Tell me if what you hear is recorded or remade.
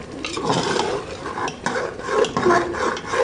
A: recorded